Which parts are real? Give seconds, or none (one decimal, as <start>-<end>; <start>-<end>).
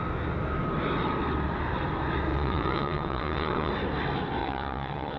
0.0-2.3; 3.7-4.4